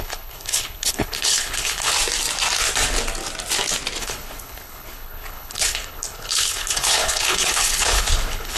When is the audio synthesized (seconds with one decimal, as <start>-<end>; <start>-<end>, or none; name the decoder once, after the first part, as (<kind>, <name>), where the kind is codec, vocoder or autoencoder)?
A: 0.0-1.9 (codec, HILCodec); 4.0-8.6